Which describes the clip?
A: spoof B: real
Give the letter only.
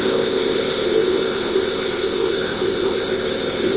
A